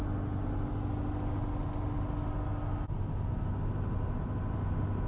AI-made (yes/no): no